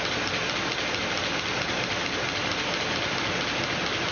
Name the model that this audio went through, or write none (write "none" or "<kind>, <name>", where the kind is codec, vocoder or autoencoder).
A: none